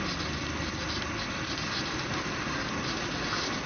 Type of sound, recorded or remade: recorded